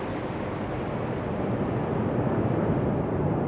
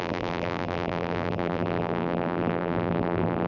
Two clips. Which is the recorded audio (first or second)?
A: first